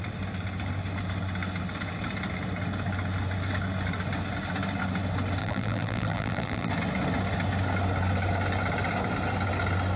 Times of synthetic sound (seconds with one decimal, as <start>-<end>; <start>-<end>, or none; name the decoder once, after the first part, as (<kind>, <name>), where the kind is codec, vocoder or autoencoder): 5.4-6.7 (vocoder, BigVGAN v2)